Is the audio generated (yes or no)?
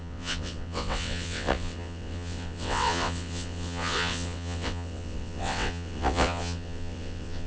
yes